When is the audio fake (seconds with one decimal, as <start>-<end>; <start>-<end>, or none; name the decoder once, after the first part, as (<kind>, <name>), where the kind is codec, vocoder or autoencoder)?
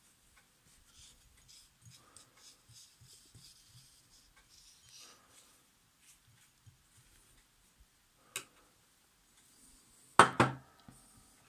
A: none